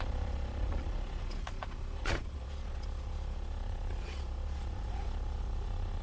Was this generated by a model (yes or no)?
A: yes